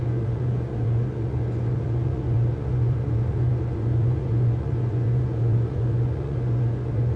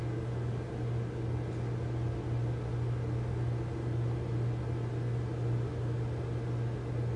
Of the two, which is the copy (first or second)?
first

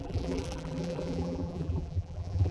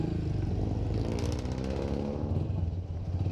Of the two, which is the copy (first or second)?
first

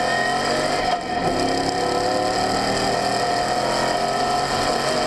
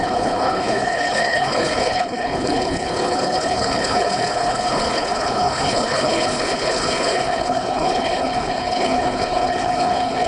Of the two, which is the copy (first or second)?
second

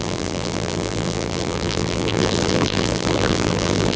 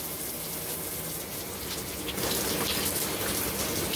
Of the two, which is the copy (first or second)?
first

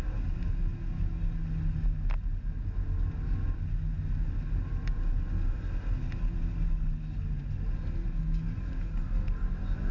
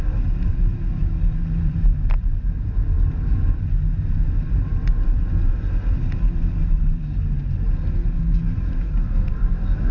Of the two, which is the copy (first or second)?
second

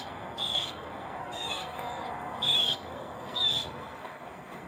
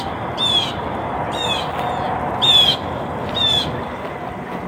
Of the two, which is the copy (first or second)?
first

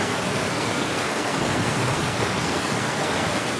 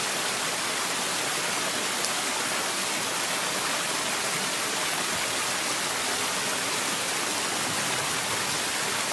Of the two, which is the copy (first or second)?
first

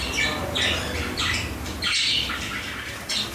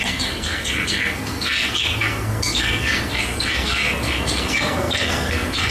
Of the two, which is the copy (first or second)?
second